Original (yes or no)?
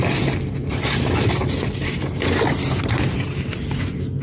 yes